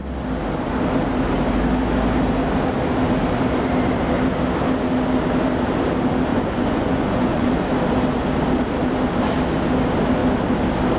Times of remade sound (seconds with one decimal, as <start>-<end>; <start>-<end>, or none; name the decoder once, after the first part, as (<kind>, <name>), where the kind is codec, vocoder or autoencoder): 6.3-7.5 (vocoder, Vocos)